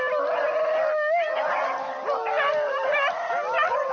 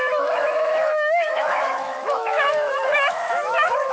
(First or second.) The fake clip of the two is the second